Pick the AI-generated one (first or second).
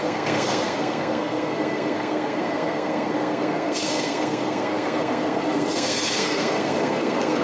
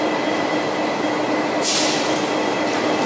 first